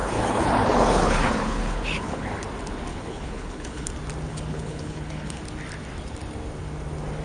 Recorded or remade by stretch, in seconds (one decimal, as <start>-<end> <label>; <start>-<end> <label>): 0.0-2.3 remade; 2.3-2.9 recorded; 2.9-3.9 remade; 3.9-4.3 recorded; 4.3-5.4 remade; 5.4-7.2 recorded